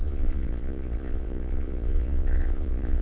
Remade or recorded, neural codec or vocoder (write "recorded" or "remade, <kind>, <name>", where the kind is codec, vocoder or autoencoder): remade, vocoder, Vocos